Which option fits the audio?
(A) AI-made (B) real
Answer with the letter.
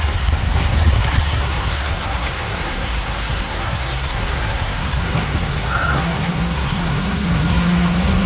A